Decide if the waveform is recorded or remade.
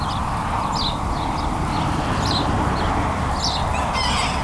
recorded